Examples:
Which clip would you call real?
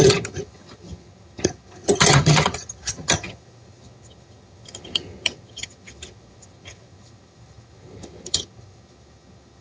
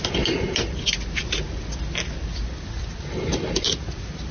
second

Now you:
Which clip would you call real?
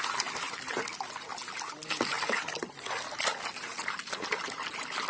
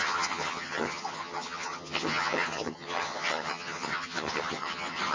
first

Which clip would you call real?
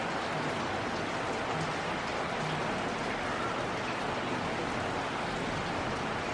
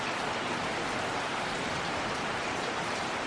first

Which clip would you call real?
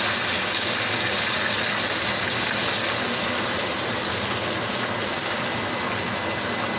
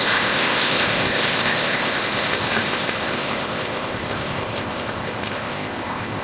first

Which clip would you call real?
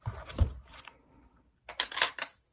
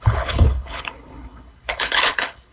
first